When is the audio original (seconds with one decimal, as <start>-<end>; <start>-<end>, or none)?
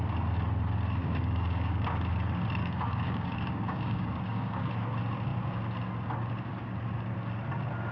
0.0-1.0; 2.1-2.6; 4.7-7.9